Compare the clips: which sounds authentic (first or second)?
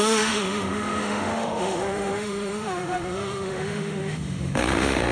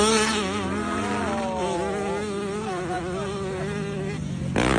second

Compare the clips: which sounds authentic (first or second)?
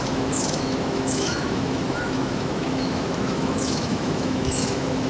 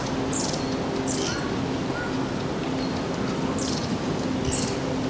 second